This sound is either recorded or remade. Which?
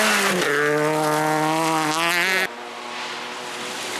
recorded